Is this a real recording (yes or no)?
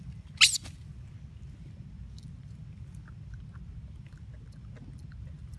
yes